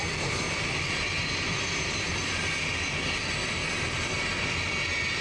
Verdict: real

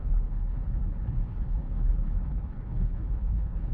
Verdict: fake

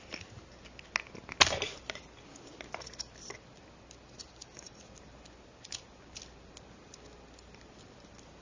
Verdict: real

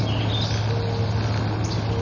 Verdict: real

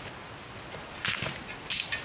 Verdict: real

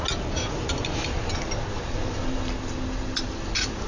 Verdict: real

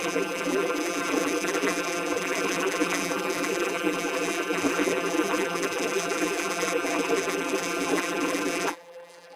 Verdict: fake